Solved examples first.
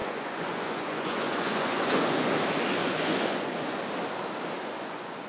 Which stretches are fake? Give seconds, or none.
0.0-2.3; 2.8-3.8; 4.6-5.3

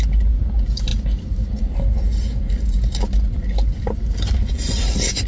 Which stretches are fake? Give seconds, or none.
none

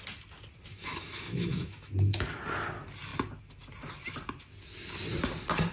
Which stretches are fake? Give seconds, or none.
0.7-2.4

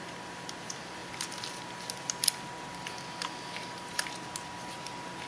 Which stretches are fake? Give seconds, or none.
none